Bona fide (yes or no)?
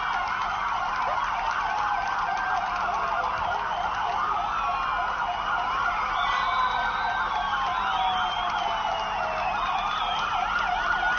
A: yes